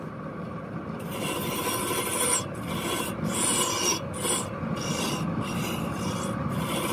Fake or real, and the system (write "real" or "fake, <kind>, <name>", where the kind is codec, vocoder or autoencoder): real